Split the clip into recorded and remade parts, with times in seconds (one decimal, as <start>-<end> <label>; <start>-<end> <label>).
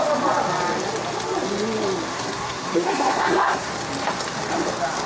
0.0-2.1 recorded; 2.1-3.7 remade; 3.7-5.1 recorded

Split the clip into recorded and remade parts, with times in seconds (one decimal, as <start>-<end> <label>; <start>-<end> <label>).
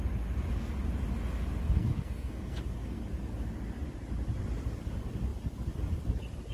0.0-1.6 recorded; 1.6-3.0 remade; 3.0-6.5 recorded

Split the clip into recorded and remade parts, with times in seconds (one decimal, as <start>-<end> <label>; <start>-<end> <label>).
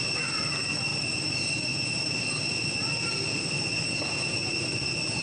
0.0-5.2 recorded